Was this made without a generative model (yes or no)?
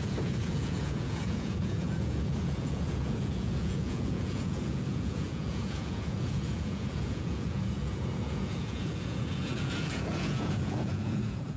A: no